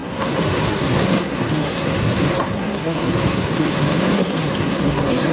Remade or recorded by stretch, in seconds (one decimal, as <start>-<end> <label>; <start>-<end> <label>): 0.0-5.3 remade